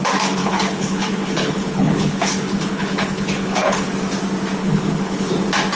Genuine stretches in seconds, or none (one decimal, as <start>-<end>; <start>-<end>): 0.0-0.4; 3.9-4.6; 5.3-5.8